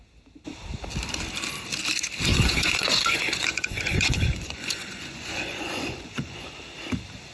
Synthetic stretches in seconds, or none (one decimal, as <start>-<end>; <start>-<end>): 2.3-6.5

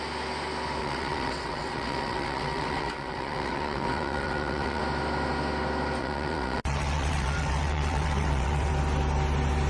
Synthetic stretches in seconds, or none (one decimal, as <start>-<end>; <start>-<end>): 0.8-4.8; 6.0-8.7

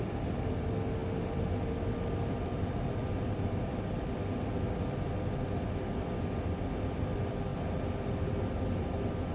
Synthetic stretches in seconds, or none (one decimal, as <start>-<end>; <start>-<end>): none

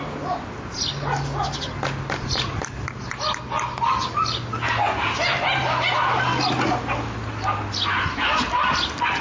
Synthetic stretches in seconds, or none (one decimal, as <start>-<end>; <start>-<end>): none

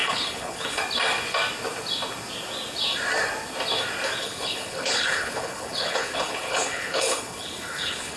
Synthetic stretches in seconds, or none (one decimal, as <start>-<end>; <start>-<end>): 0.0-0.8; 4.2-8.2

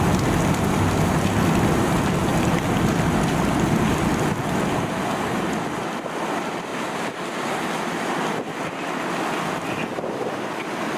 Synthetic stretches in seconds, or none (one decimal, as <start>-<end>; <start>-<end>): 6.7-8.1

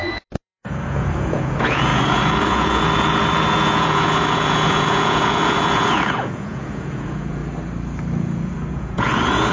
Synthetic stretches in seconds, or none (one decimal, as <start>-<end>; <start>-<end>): 0.0-7.4; 8.2-9.5